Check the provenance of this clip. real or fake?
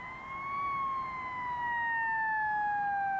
real